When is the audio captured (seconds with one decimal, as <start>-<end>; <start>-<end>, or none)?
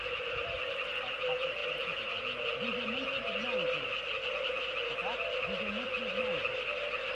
0.0-7.1